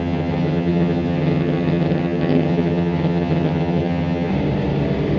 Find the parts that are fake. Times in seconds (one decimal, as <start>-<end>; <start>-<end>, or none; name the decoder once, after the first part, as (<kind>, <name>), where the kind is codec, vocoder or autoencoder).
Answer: 0.0-4.3 (vocoder, HiFi-GAN)